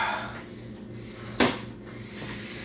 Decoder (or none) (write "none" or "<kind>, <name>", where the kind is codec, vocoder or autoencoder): none